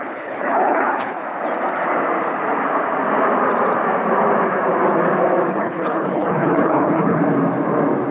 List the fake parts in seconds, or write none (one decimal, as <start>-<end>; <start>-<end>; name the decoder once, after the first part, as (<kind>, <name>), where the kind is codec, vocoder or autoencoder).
0.0-1.2 (codec, HILCodec); 5.5-7.2